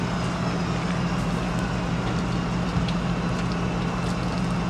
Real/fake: real